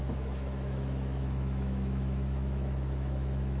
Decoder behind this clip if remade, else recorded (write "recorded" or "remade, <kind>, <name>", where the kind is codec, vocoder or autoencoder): remade, autoencoder, DAC-VAE